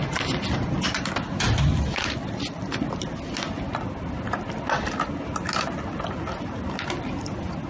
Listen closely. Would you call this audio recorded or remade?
recorded